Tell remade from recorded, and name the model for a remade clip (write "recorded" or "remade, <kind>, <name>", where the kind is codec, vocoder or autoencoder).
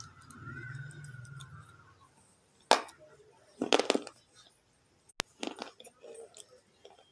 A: recorded